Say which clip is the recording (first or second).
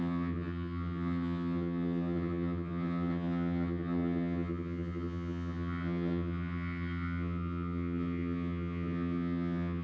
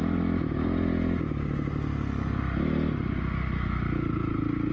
second